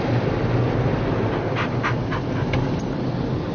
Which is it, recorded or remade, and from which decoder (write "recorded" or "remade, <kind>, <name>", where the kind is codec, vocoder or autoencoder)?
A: recorded